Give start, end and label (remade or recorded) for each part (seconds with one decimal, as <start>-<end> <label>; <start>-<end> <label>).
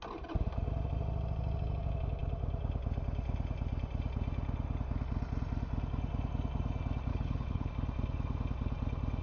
0.0-7.1 recorded; 7.1-7.7 remade; 7.7-9.2 recorded